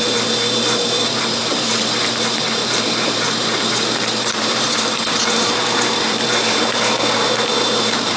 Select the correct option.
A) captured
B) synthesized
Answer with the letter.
B